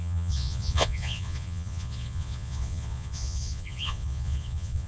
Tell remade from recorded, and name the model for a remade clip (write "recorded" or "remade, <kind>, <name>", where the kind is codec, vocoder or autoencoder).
remade, vocoder, Vocos